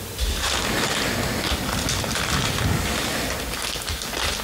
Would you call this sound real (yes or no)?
yes